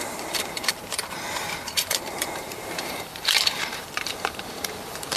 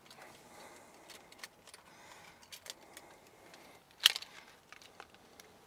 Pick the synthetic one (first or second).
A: first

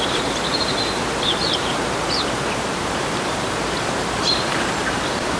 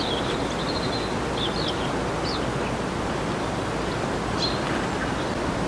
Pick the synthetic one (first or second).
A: first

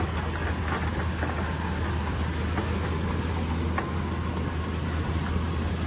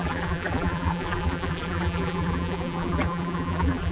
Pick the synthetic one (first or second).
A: second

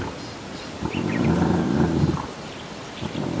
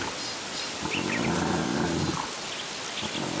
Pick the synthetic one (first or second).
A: first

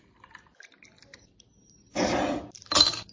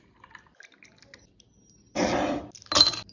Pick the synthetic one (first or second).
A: first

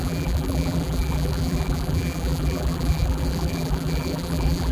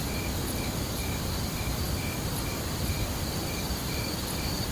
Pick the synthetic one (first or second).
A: first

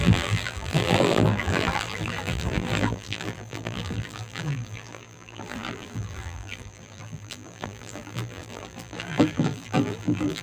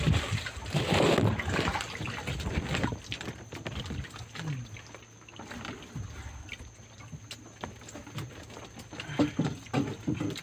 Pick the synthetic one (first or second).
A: first